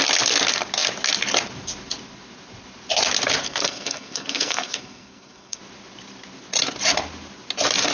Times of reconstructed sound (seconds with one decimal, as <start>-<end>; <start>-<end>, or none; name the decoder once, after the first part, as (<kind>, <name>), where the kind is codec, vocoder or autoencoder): 3.4-5.6 (codec, SNAC)